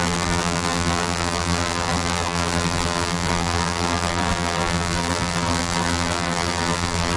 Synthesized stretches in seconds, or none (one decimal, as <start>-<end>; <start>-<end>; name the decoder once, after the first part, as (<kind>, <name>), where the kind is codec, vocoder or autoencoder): 0.0-7.2 (vocoder, BigVGAN v2)